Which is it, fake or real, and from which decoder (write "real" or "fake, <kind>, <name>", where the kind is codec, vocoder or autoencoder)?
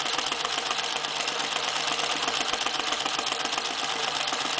real